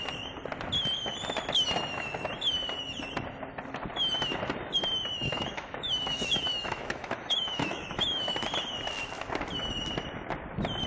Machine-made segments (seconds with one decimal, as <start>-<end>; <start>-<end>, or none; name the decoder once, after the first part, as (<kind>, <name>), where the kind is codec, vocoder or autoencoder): 5.3-8.3 (autoencoder, DAC-VAE)